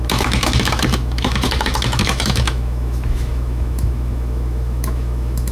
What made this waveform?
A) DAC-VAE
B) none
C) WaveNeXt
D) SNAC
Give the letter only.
A